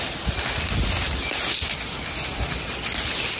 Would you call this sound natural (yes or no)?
yes